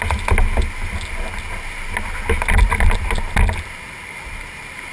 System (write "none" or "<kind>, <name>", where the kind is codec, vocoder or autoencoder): none